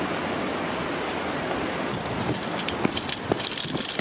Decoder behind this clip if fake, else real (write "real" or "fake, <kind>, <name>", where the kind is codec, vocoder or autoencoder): real